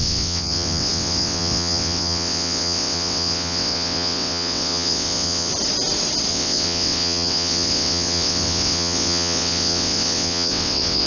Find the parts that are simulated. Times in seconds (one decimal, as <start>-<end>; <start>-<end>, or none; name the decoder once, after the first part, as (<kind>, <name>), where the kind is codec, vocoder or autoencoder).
0.0-5.5 (vocoder, WaveNeXt); 6.3-11.1